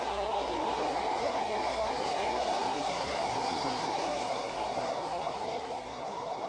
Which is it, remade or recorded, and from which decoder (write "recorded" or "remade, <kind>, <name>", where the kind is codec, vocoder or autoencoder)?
remade, codec, SNAC